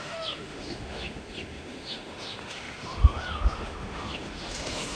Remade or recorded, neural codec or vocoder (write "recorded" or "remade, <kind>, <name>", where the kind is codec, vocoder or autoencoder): remade, autoencoder, DAC-VAE